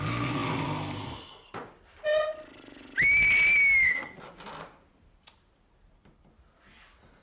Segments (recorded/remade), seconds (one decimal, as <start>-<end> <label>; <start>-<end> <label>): 0.0-7.2 recorded